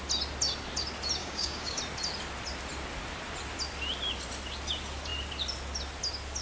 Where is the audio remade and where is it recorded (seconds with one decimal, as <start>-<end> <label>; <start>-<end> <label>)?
0.0-1.2 recorded; 1.2-1.8 remade; 1.8-6.4 recorded